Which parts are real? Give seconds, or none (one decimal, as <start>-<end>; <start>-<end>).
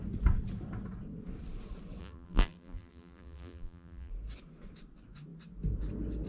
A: 0.0-2.0; 4.1-6.3